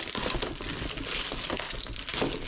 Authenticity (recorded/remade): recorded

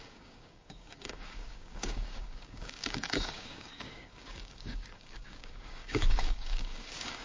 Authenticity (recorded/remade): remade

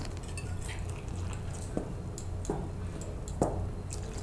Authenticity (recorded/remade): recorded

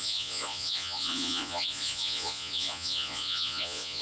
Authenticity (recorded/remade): remade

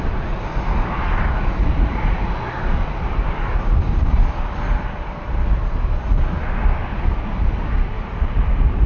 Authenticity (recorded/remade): recorded